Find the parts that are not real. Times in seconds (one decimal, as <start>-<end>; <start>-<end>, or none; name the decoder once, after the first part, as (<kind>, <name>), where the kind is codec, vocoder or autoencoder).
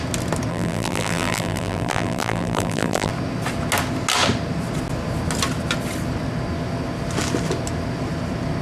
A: 0.5-3.1 (vocoder, BigVGAN v2)